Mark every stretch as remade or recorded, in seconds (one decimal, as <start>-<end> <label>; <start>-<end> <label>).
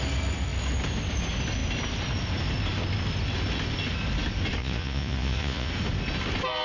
0.0-4.6 recorded; 4.6-5.7 remade; 5.7-6.6 recorded